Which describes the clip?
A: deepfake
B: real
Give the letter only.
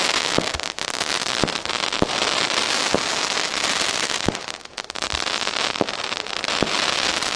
B